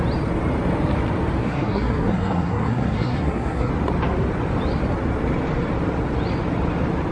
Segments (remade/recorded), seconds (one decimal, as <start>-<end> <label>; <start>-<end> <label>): 0.0-1.4 recorded; 1.4-3.7 remade; 3.7-7.1 recorded